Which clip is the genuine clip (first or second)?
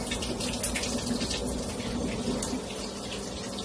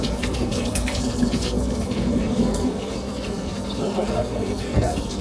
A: first